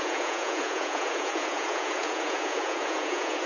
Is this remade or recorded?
remade